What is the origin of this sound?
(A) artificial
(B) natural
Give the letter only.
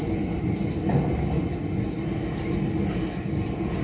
B